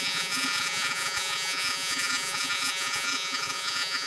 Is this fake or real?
fake